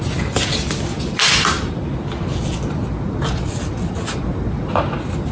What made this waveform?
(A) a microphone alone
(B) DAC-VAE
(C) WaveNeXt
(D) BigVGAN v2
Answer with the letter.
A